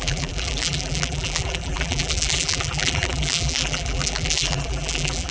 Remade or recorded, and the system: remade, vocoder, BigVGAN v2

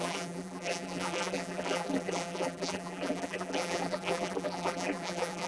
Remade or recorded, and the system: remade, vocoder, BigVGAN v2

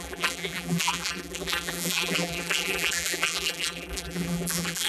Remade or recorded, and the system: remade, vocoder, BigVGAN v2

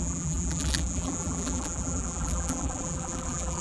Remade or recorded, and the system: remade, vocoder, BigVGAN v2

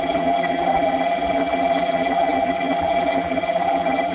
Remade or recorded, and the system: remade, vocoder, BigVGAN v2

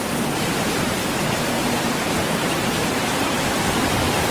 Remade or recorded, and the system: remade, vocoder, BigVGAN v2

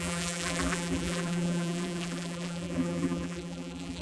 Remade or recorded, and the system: remade, vocoder, BigVGAN v2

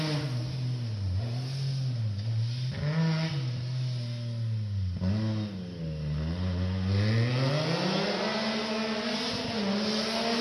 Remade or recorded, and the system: recorded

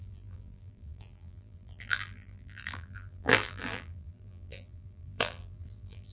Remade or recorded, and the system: remade, vocoder, BigVGAN v2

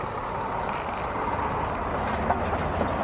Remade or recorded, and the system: recorded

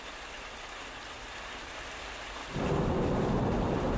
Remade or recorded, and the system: recorded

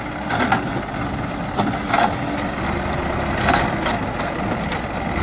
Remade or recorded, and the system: recorded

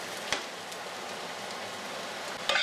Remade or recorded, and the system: recorded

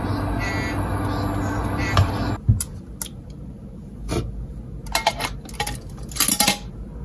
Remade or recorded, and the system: recorded